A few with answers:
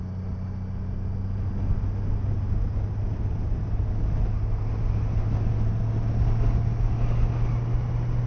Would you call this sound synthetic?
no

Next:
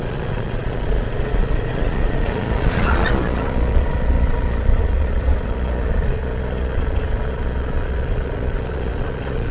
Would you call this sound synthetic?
yes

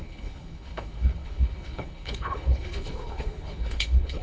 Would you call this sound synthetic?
yes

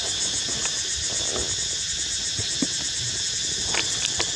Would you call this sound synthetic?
no